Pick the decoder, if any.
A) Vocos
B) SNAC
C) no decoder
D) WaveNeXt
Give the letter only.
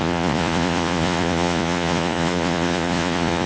A